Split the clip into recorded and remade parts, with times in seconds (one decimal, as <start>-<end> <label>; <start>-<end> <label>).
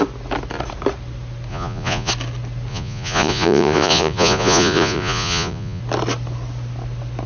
0.0-1.5 recorded; 1.5-2.1 remade; 2.1-2.7 recorded; 2.7-5.8 remade; 5.8-7.3 recorded